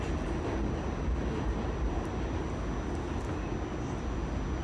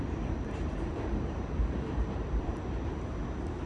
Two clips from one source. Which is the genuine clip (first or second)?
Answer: first